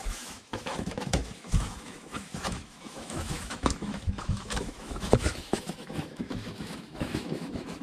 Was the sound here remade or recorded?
remade